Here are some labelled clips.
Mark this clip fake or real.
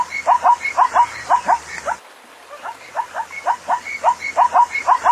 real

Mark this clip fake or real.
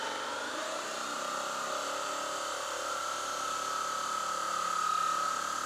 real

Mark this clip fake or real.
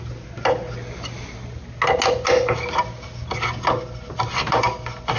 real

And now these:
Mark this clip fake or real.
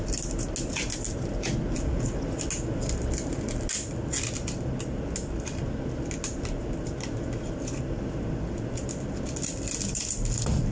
real